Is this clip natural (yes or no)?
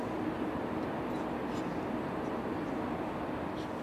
yes